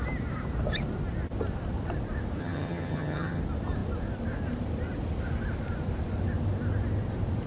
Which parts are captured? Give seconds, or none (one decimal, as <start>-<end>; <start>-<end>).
0.0-2.4; 3.4-7.5